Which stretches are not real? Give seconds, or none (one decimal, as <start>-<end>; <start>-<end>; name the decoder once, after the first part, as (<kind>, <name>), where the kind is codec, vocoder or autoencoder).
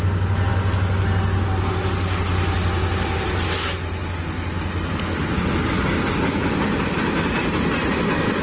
none